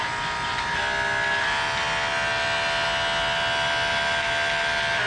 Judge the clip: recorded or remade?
recorded